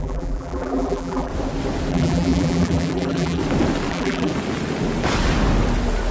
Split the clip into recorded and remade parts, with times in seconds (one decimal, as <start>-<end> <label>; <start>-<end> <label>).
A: 0.0-1.3 remade; 1.3-1.9 recorded; 1.9-3.4 remade; 3.4-3.9 recorded; 3.9-4.3 remade; 4.3-6.1 recorded